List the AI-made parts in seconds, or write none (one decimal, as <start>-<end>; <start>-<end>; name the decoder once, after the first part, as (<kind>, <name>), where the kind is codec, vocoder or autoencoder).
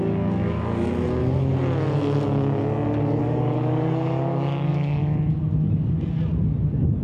0.0-1.2 (codec, DAC); 3.2-5.0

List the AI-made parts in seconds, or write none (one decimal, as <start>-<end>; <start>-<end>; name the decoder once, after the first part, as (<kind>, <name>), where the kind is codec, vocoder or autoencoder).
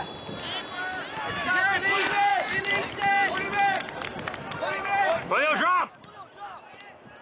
none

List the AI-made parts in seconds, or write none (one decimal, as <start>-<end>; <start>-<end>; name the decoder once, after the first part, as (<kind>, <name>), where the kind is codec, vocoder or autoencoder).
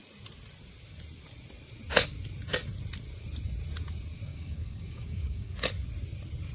4.3-5.7 (codec, DAC)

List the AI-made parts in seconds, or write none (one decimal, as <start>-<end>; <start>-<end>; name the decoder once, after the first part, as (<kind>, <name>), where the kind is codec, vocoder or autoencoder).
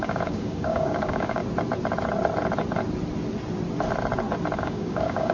0.0-1.4 (codec, DAC); 4.6-5.3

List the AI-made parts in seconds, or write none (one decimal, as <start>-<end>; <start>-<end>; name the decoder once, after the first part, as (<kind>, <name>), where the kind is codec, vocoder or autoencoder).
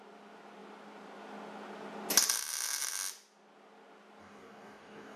4.2-5.2 (codec, DAC)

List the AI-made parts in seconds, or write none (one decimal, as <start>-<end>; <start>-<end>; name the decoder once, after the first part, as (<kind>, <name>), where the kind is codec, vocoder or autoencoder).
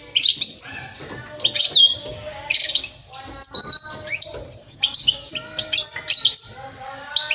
2.0-2.9 (codec, DAC); 4.6-5.3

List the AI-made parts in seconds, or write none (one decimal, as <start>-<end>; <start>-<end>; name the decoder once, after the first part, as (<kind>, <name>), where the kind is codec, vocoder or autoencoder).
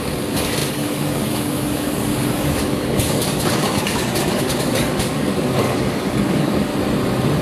0.0-6.7 (codec, DAC)